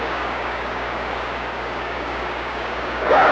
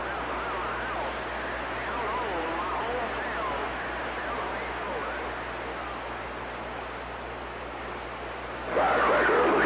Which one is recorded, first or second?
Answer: second